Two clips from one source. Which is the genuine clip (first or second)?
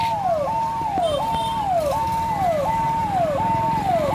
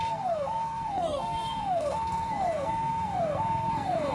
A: first